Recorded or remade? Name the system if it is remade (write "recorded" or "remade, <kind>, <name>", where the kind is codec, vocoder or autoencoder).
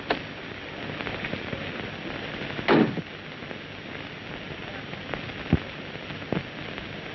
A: recorded